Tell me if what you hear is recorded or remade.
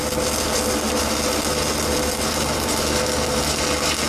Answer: recorded